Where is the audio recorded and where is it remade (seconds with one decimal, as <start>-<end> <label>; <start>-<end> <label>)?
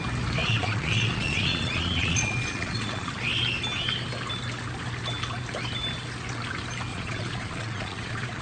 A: 0.0-0.4 recorded; 0.4-3.1 remade; 3.1-6.9 recorded; 6.9-8.4 remade